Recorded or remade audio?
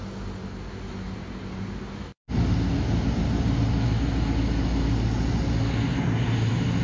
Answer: recorded